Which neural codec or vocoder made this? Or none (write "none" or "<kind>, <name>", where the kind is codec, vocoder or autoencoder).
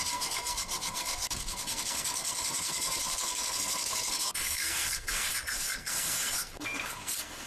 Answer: codec, SNAC